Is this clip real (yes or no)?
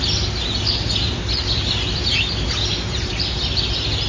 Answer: yes